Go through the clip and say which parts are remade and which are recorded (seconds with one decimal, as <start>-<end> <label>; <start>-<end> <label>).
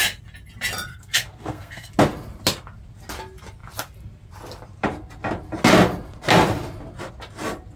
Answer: 0.0-0.9 recorded; 0.9-1.9 remade; 1.9-7.8 recorded